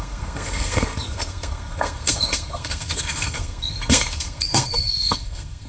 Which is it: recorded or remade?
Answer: remade